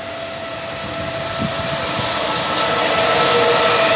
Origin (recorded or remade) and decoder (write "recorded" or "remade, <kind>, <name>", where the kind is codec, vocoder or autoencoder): recorded